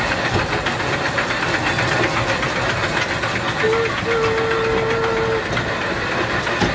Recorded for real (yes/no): yes